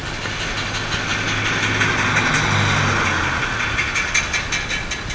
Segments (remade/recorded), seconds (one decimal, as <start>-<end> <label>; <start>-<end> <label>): 0.0-5.1 recorded